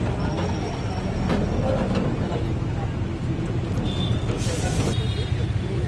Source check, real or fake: real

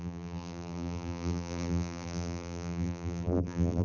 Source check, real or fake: fake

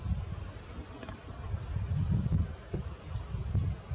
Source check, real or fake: real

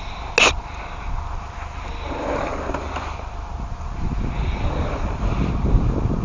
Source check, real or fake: real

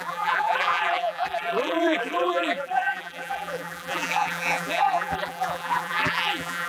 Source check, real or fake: fake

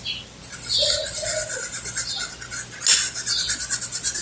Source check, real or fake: real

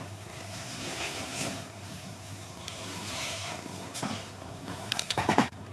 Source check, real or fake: fake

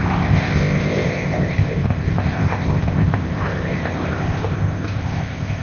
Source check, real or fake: fake